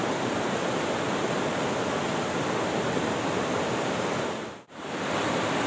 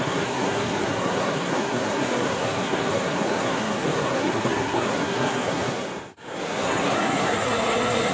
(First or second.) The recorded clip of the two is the first